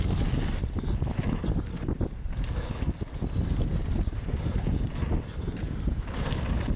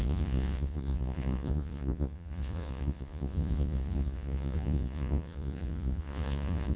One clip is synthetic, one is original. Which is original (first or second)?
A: first